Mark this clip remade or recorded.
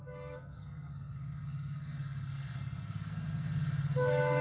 remade